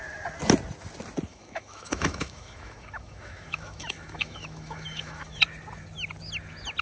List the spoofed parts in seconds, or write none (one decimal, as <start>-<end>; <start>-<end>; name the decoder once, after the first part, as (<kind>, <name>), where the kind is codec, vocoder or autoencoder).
1.3-5.4 (autoencoder, DAC-VAE)

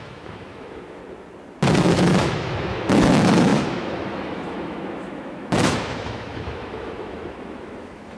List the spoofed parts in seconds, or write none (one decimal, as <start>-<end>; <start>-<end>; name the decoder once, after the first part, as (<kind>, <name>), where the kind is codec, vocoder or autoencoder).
0.0-1.0 (autoencoder, DAC-VAE); 1.8-8.2

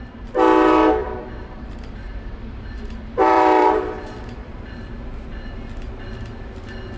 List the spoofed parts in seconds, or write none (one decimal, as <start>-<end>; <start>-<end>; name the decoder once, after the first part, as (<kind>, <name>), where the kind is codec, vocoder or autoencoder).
1.0-4.9 (vocoder, BigVGAN v2)

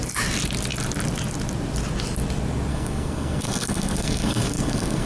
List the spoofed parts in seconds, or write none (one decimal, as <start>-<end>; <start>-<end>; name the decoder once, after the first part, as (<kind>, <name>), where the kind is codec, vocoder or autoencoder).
2.7-5.1 (codec, SNAC)

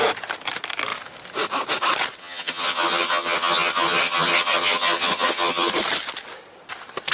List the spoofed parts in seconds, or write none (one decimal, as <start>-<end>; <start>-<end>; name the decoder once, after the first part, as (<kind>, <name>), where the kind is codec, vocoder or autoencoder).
2.2-5.7 (vocoder, HiFi-GAN)

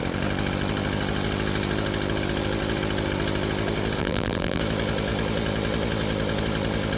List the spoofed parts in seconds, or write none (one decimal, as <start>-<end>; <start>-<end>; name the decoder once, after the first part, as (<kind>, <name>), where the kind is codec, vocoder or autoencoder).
4.0-4.6 (vocoder, BigVGAN v2)

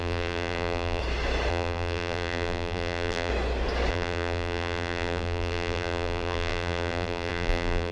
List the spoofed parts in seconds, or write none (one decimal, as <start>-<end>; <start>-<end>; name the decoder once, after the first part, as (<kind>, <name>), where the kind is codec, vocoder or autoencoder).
0.0-1.0 (vocoder, BigVGAN v2); 1.5-3.3; 3.9-7.9